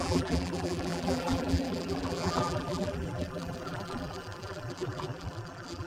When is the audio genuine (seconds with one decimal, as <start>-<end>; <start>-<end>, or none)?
none